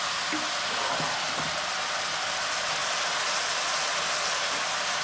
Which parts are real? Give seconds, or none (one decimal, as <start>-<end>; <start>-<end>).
0.0-5.0